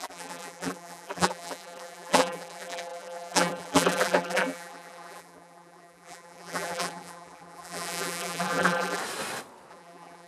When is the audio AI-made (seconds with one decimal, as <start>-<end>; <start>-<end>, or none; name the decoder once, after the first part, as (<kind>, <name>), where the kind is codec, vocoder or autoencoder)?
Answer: 0.0-9.0 (vocoder, BigVGAN v2); 9.7-10.3